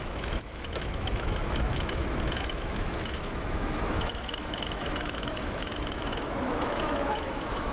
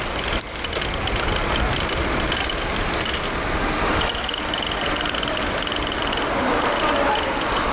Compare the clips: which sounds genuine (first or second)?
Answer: second